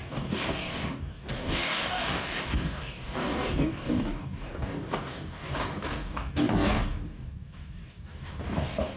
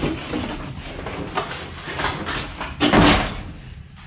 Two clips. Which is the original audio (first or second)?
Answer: second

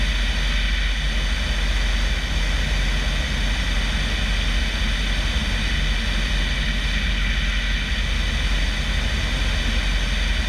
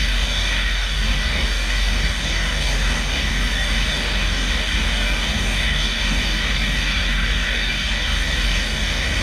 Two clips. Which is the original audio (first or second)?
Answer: first